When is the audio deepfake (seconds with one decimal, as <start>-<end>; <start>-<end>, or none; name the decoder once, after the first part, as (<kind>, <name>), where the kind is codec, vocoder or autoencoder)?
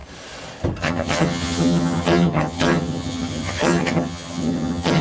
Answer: 0.8-5.0 (vocoder, HiFi-GAN)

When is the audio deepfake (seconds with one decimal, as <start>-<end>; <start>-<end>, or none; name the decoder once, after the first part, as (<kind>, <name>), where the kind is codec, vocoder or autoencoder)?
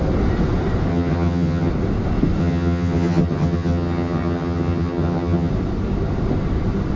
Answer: 0.9-1.7 (vocoder, HiFi-GAN); 2.4-5.5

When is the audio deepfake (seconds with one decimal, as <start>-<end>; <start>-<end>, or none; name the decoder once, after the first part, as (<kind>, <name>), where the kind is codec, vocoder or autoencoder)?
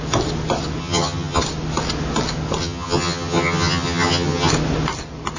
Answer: 0.8-1.4 (vocoder, HiFi-GAN); 2.6-4.5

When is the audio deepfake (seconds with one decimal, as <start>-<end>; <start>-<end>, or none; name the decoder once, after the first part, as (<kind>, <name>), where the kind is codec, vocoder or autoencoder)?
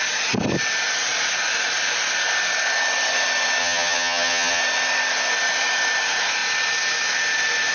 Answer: 3.6-4.6 (vocoder, HiFi-GAN)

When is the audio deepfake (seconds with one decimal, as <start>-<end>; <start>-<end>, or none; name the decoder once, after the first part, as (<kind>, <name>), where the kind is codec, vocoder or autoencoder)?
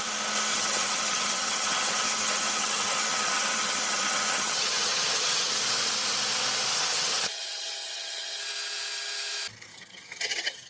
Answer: 0.5-5.5 (vocoder, HiFi-GAN); 6.7-8.4; 9.7-10.7